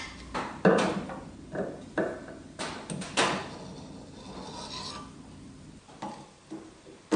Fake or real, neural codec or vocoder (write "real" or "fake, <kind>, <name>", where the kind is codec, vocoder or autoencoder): real